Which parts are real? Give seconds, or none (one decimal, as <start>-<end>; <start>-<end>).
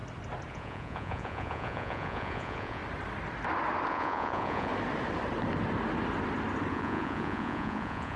0.0-0.5; 2.8-3.9; 4.7-6.7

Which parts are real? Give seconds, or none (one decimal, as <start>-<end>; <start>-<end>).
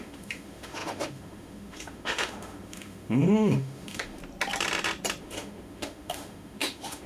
4.2-5.2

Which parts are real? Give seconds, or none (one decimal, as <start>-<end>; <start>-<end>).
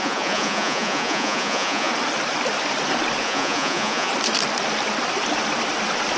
1.9-3.2; 4.1-6.2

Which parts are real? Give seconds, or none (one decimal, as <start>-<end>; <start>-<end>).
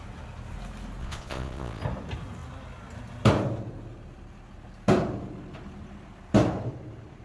0.0-1.0; 1.8-7.2